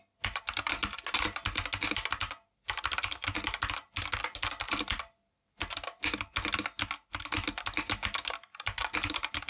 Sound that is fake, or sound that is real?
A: real